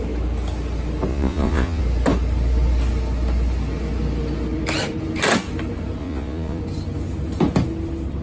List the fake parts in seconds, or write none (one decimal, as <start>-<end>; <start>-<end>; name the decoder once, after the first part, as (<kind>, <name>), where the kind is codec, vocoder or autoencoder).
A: 1.1-1.8 (vocoder, Vocos); 6.0-6.6